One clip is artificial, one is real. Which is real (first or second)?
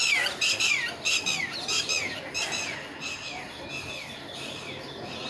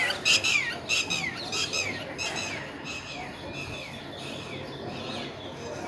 second